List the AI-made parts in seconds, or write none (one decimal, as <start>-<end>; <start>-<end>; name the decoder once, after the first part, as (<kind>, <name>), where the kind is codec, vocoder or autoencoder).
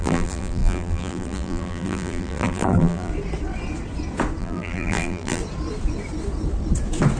0.0-3.1 (vocoder, BigVGAN v2); 4.4-5.4